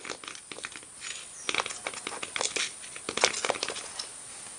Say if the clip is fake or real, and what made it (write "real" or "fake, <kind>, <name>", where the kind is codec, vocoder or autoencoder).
real